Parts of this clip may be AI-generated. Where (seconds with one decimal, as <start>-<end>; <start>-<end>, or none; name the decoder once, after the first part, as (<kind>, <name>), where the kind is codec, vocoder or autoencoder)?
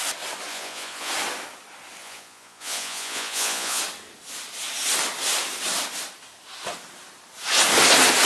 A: 0.5-1.1 (vocoder, Vocos); 2.0-3.8